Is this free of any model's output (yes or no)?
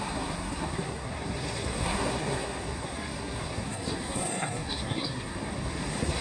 no